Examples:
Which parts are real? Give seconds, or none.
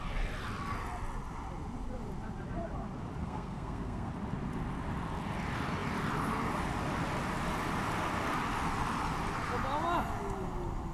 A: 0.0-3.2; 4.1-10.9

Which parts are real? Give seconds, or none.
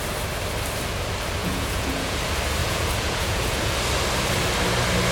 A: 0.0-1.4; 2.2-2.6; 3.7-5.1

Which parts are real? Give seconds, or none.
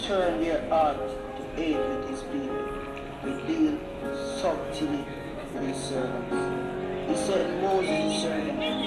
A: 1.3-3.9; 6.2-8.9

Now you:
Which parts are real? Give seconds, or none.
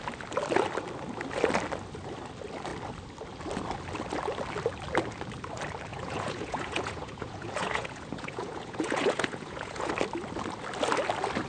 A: 0.0-5.9; 9.9-11.5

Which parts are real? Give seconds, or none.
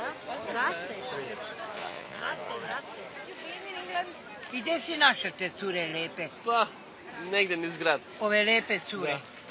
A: 0.0-1.7; 2.5-9.5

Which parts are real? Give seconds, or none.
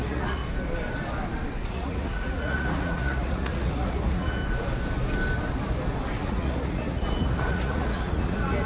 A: 0.4-1.7; 4.4-6.2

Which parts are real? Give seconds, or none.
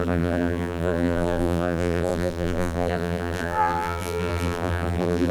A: none